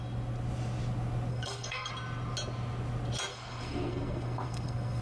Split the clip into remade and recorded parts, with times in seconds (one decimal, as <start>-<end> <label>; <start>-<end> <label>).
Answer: 0.0-1.3 recorded; 1.3-1.9 remade; 1.9-3.3 recorded; 3.3-5.0 remade